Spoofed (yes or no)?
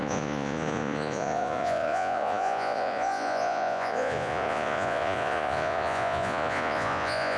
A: yes